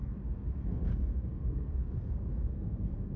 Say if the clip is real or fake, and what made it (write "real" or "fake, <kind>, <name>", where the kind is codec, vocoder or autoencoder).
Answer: fake, codec, SNAC